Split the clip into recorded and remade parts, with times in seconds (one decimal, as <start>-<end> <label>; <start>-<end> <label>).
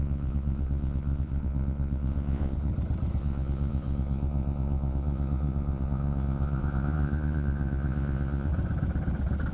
0.0-2.7 remade; 2.7-3.2 recorded; 3.2-8.5 remade; 8.5-9.5 recorded